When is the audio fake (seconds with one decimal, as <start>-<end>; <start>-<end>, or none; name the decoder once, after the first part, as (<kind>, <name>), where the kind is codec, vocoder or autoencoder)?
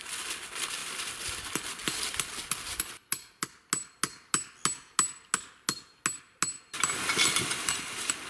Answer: none